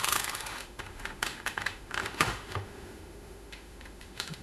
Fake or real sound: fake